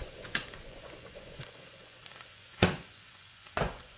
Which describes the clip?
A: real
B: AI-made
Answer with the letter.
B